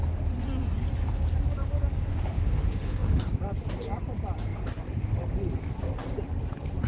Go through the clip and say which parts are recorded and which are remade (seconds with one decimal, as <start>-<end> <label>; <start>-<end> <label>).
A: 0.0-2.1 recorded; 2.1-3.2 remade; 3.2-6.9 recorded